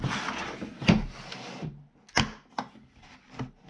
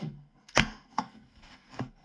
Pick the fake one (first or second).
second